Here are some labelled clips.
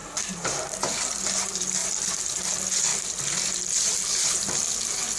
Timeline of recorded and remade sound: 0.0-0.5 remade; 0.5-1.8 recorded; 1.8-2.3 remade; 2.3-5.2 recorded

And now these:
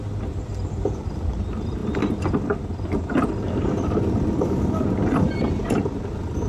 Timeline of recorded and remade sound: 0.0-1.8 remade; 1.8-3.4 recorded; 3.4-6.5 remade

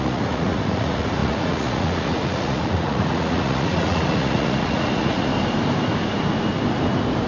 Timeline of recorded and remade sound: 0.0-5.3 remade; 5.3-7.3 recorded

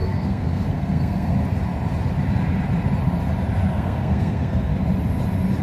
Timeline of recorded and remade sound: 0.0-1.3 remade; 1.3-3.7 recorded; 3.7-4.7 remade; 4.7-5.6 recorded

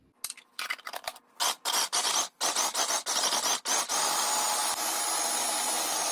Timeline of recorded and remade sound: 0.0-6.1 recorded

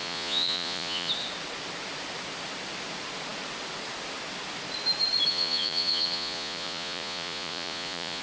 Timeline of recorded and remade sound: 0.0-1.1 remade; 1.1-5.3 recorded; 5.3-8.2 remade